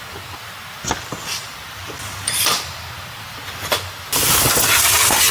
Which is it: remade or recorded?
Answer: recorded